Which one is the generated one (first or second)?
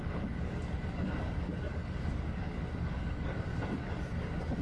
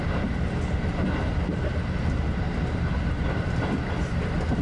first